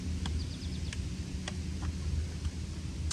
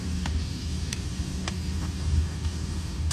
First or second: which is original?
first